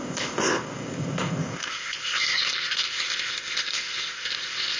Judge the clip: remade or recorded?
remade